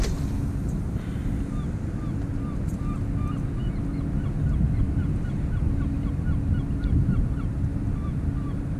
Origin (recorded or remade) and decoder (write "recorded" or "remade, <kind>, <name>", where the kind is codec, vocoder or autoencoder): recorded